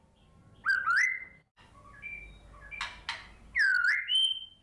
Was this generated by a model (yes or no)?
no